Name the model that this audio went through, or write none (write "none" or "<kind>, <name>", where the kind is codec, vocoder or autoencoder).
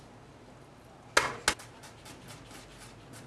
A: none